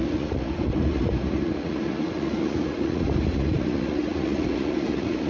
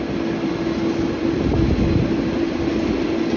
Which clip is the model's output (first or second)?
first